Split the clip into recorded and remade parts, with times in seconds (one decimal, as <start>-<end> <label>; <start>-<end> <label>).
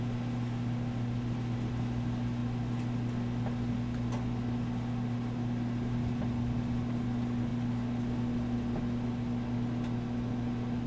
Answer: 0.0-10.9 recorded